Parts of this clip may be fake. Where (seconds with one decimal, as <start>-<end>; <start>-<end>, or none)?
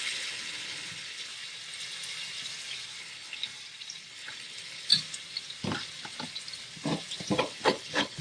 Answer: 0.0-1.3; 3.0-3.5; 4.1-4.9; 7.4-8.2